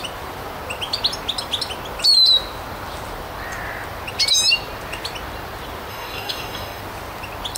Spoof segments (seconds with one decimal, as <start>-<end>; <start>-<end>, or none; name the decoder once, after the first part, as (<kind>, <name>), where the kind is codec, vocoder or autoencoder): 5.9-6.8 (codec, DAC)